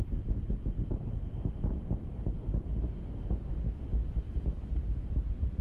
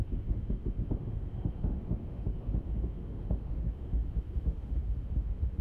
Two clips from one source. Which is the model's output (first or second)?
second